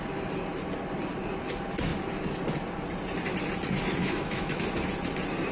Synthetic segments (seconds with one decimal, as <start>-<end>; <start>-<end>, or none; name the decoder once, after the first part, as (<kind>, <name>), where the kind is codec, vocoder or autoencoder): 4.0-4.6 (autoencoder, DAC-VAE)